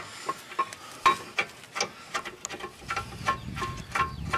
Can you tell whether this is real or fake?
real